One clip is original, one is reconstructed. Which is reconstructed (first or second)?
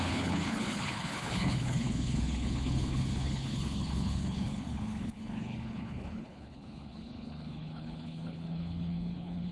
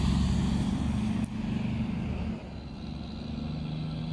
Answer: first